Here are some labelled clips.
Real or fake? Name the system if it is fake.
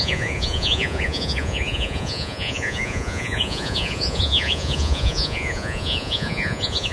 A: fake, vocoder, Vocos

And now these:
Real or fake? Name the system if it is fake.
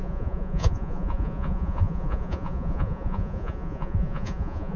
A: fake, vocoder, Vocos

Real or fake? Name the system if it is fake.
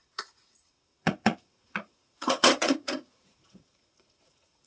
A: fake, vocoder, Vocos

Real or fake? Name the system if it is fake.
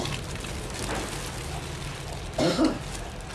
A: real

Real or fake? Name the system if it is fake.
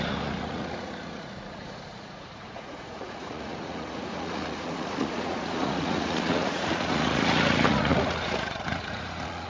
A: fake, vocoder, Vocos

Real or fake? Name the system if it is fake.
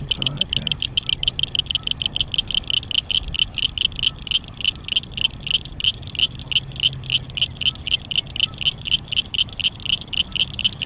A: real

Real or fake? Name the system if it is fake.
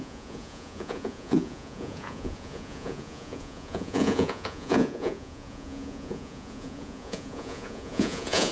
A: fake, vocoder, Vocos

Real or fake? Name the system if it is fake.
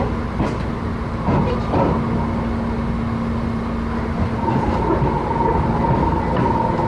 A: real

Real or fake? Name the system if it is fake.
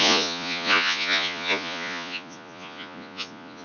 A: fake, vocoder, Vocos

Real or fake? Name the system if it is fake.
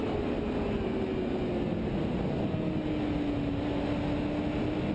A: real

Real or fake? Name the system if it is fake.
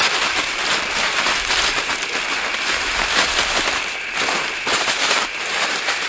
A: real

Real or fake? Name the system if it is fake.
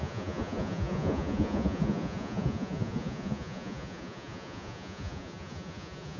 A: fake, vocoder, Vocos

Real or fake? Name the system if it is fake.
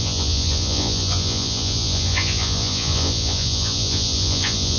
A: fake, vocoder, Vocos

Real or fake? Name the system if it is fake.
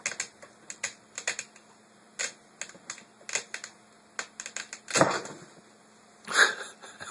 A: real